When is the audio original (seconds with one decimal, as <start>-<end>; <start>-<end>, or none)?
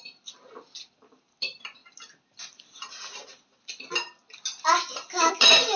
0.0-5.8